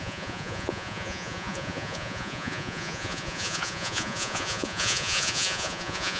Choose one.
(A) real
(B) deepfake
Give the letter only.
B